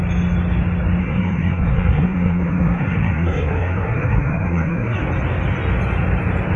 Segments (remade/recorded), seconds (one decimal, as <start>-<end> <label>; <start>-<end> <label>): 0.0-1.0 recorded; 1.0-5.0 remade; 5.0-6.6 recorded